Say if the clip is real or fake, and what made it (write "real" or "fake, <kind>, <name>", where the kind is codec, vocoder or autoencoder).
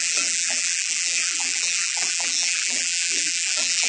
fake, vocoder, BigVGAN v2